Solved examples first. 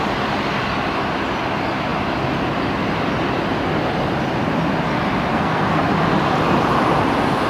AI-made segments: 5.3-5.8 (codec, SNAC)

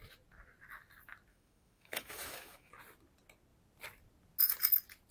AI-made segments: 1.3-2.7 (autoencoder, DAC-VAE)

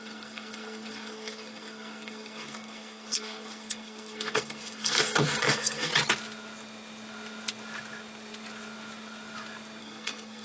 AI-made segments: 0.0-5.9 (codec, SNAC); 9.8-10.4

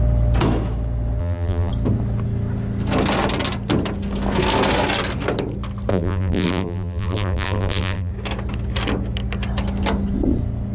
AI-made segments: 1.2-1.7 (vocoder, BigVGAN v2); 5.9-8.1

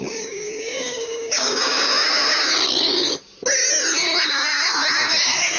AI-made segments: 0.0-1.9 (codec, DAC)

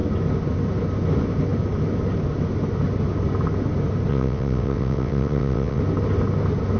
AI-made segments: 4.1-5.8 (vocoder, WaveNeXt)

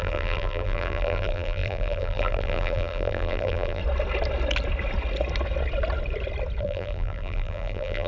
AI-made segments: 0.0-3.8 (vocoder, BigVGAN v2); 6.6-8.1